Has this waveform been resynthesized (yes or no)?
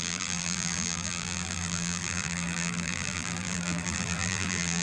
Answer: yes